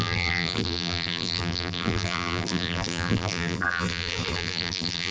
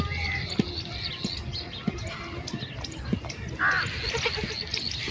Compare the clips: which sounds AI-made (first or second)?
first